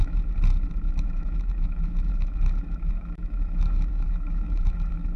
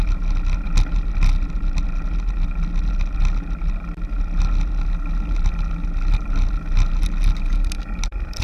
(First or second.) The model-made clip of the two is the first